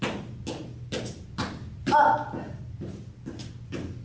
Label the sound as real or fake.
real